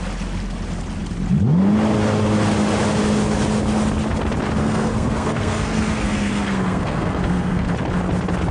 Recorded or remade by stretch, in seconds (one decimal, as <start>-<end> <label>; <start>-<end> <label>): 0.0-4.6 recorded; 4.6-7.7 remade; 7.7-8.5 recorded